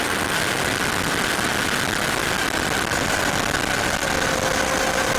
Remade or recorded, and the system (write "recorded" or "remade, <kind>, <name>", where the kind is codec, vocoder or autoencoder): recorded